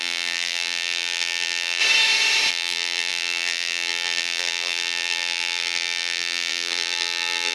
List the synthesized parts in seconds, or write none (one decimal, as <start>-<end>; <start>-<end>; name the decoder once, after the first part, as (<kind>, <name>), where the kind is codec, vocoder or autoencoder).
0.0-1.8 (vocoder, BigVGAN v2); 2.5-7.5